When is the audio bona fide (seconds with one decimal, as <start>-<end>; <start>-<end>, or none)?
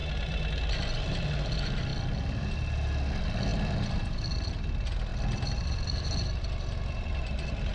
0.5-1.9; 2.4-3.5; 4.5-5.1